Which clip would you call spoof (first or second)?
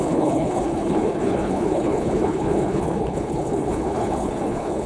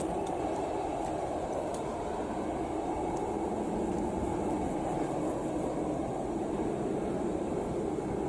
first